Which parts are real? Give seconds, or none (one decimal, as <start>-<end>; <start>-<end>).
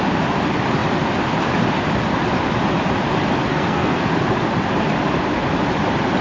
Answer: 0.0-3.5; 4.0-6.2